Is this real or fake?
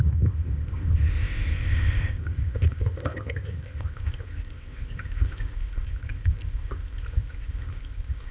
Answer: fake